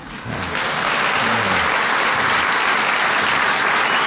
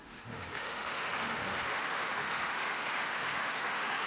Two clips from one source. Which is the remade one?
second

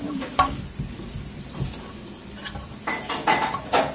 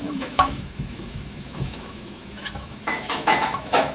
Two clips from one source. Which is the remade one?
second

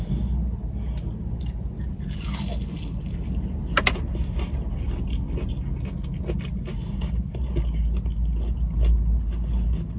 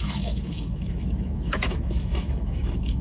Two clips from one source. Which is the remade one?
second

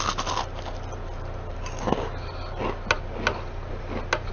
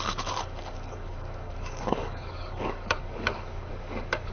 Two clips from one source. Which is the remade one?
second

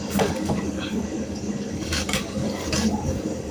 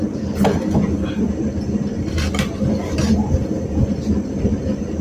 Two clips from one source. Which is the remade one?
first